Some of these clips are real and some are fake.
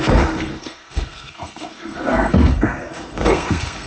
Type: fake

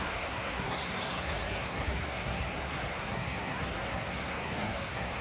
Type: fake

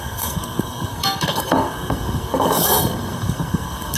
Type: fake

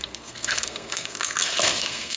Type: fake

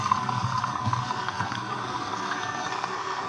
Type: fake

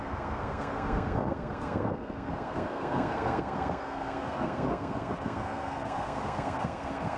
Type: fake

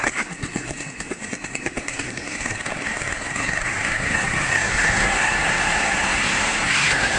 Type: fake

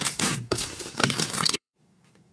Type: fake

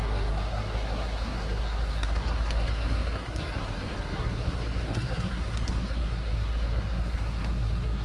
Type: fake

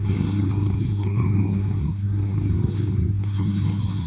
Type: fake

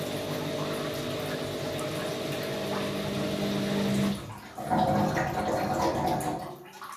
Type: real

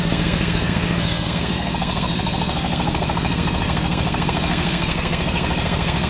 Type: fake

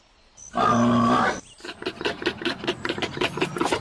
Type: real